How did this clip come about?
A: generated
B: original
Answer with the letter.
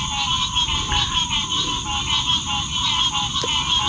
B